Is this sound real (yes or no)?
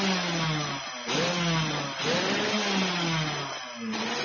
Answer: yes